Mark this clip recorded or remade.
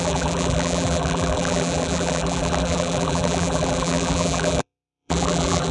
remade